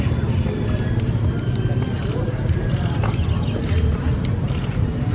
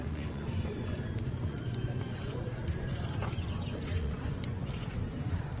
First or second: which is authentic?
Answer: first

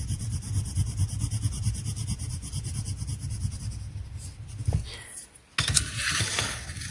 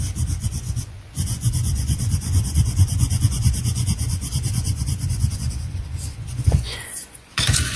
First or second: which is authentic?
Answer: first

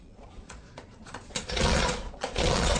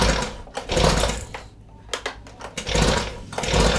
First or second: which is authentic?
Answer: second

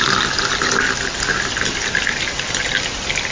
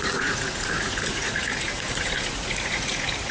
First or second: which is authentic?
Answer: first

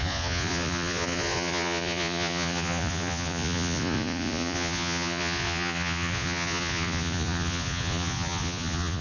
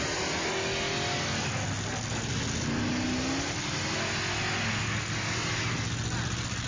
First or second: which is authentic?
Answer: second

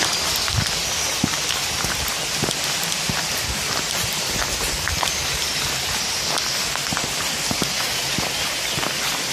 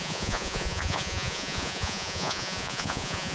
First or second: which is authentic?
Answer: first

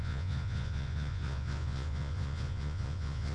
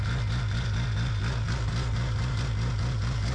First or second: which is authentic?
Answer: second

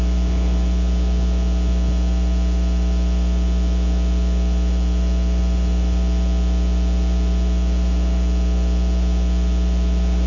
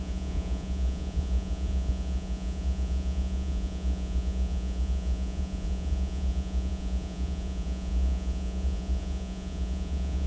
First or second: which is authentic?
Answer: first